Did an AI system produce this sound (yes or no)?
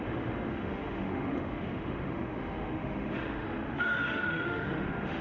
yes